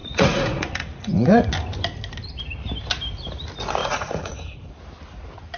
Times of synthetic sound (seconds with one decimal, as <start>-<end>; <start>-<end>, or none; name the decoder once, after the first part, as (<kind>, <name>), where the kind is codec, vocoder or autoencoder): 0.0-1.5 (vocoder, Vocos); 3.8-4.7